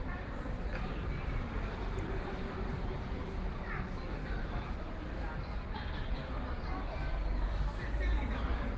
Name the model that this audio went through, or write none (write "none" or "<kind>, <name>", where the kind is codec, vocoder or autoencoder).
none